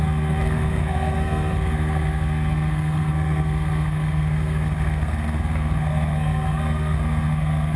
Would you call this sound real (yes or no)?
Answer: no